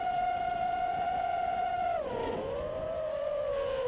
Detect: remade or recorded remade